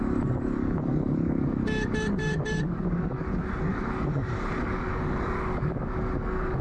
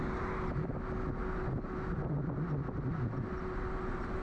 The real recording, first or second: second